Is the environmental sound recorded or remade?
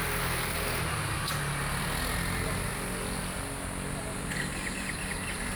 recorded